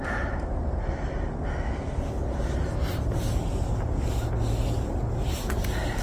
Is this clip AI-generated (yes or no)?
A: no